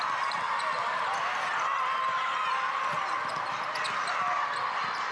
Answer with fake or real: real